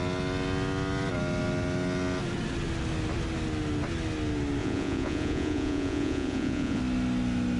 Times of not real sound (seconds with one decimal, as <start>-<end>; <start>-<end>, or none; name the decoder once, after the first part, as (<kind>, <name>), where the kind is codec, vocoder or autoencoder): 4.6-6.8 (vocoder, Vocos)